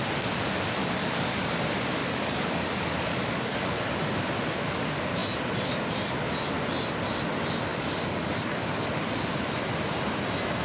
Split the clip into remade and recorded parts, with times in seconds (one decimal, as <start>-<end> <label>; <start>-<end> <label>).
0.0-0.8 recorded; 0.8-1.5 remade; 1.5-2.0 recorded; 2.0-4.2 remade; 4.2-7.7 recorded; 7.7-8.8 remade; 8.8-10.6 recorded